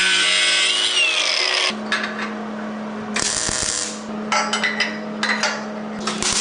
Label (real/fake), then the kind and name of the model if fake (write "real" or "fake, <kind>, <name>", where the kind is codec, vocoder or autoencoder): real